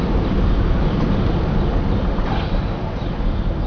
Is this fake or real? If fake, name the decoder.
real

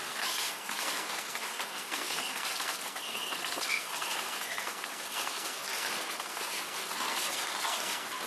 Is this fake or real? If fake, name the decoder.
fake, codec, SNAC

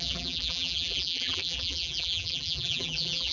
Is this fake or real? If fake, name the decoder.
fake, vocoder, BigVGAN v2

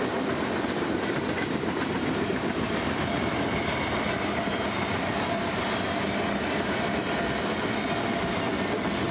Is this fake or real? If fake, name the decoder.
real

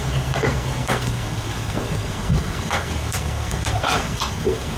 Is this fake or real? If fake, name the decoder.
fake, codec, SNAC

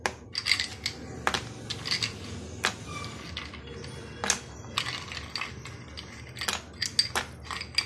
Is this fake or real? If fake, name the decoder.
real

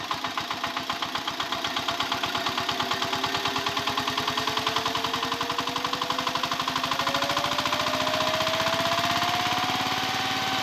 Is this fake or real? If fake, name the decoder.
real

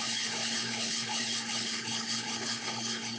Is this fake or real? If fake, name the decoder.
fake, codec, HILCodec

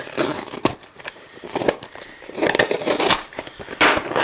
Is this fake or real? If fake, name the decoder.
fake, vocoder, BigVGAN v2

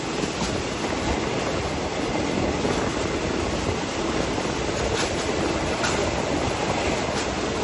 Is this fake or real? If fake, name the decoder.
real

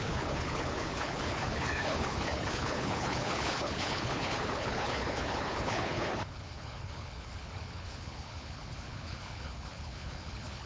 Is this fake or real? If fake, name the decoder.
fake, codec, HILCodec